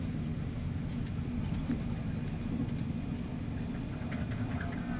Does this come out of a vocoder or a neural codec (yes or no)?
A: no